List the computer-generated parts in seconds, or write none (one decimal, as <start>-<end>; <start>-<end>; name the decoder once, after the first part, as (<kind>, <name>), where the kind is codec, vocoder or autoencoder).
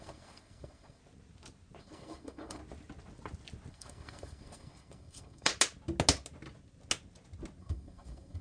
0.0-1.0 (codec, SNAC); 1.8-2.6; 3.7-5.5; 7.6-8.4